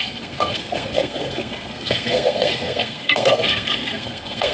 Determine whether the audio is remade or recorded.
remade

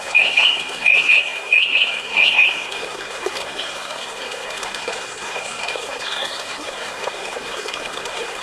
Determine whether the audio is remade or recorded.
remade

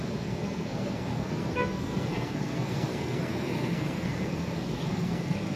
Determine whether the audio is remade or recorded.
remade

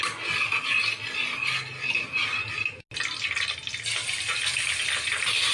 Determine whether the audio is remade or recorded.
recorded